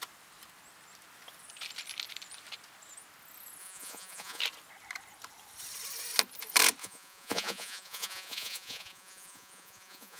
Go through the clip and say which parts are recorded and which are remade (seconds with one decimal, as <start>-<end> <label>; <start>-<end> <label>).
0.0-3.6 recorded; 3.6-4.4 remade; 4.4-6.8 recorded; 6.8-10.2 remade